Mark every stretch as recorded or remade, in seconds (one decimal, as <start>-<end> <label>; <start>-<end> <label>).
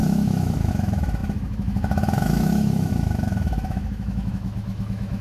0.0-5.2 remade